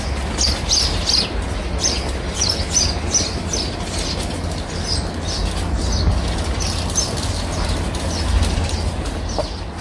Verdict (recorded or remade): recorded